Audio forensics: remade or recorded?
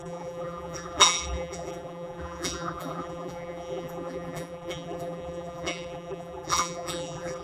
remade